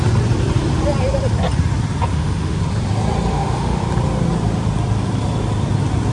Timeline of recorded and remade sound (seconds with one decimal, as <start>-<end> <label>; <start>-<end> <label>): 0.0-2.1 recorded; 2.1-2.6 remade; 2.6-3.3 recorded; 3.3-3.8 remade; 3.8-6.1 recorded